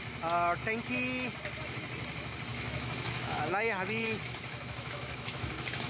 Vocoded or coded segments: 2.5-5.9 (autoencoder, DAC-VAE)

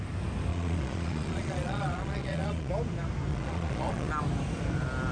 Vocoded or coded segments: 0.5-2.7 (vocoder, Vocos); 3.3-4.1

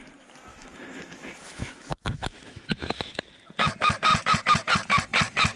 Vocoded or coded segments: 0.5-3.2 (autoencoder, DAC-VAE)

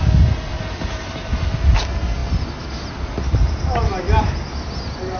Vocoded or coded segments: 0.5-1.7 (vocoder, BigVGAN v2)